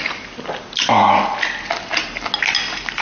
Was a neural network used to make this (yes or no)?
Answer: no